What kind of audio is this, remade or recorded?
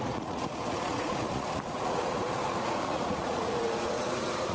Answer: remade